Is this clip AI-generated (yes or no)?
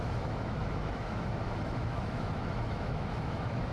yes